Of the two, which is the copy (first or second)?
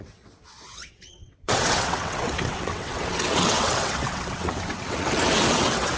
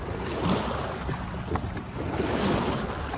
first